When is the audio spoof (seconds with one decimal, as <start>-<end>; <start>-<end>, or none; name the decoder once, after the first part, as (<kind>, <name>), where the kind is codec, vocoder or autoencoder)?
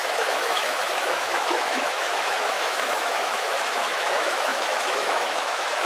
0.0-5.9 (autoencoder, DAC-VAE)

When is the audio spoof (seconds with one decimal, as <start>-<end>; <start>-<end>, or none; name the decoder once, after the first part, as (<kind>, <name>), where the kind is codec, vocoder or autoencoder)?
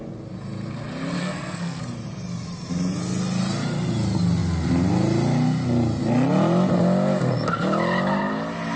1.2-1.8 (codec, SNAC)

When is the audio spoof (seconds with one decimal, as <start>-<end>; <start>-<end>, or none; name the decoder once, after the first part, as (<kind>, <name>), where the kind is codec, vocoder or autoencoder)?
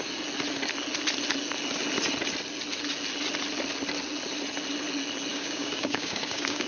5.3-6.7 (codec, DAC)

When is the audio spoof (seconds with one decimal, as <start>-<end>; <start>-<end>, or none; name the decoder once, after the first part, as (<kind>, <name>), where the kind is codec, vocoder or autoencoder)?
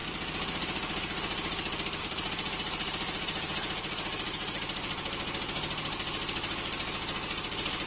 0.0-5.0 (vocoder, BigVGAN v2); 7.4-7.9